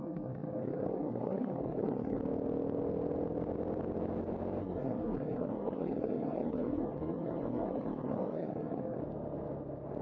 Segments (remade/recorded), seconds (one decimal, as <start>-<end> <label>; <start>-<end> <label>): 0.0-2.2 remade; 2.2-4.6 recorded; 4.6-9.0 remade; 9.0-10.0 recorded